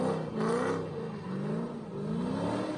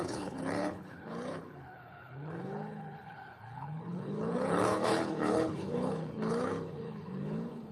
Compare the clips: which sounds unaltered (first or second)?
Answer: first